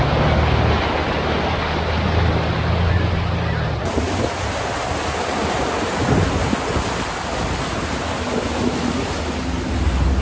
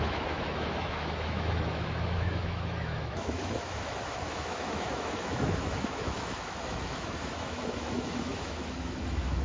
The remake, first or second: second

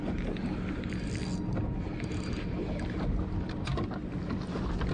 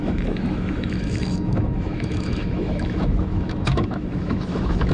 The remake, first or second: second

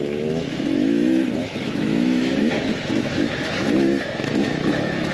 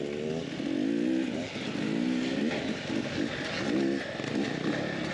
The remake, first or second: first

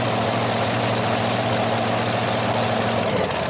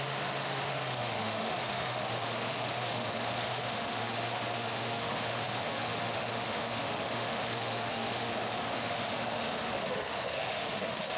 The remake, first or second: second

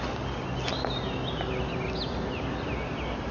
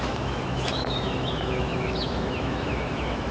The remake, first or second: second